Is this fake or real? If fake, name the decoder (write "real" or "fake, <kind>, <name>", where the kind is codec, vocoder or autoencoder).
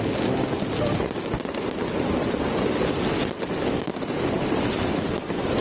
real